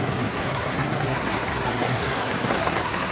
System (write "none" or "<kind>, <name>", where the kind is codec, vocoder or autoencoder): codec, SNAC